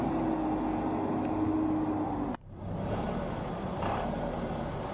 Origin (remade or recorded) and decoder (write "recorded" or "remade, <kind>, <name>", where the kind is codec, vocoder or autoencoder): recorded